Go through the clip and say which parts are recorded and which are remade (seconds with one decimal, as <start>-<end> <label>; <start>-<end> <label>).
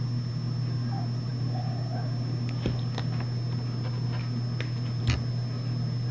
0.0-6.1 recorded